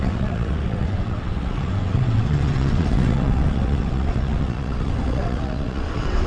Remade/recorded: remade